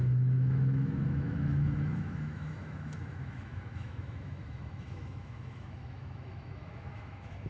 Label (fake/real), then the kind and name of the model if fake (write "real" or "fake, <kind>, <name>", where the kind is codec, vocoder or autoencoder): fake, autoencoder, DAC-VAE